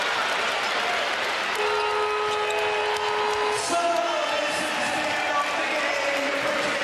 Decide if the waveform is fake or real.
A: real